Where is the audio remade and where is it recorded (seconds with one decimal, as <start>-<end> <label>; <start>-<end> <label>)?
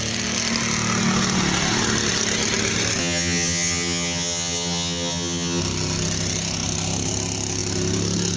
0.0-3.0 recorded; 3.0-5.6 remade; 5.6-8.4 recorded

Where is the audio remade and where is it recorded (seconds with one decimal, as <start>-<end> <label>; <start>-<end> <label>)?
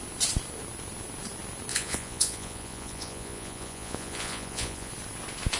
0.0-1.7 recorded; 1.7-4.9 remade; 4.9-5.6 recorded